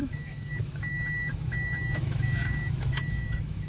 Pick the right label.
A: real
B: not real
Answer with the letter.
B